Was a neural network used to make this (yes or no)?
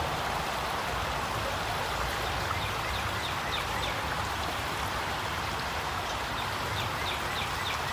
no